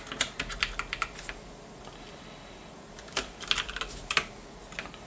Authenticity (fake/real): real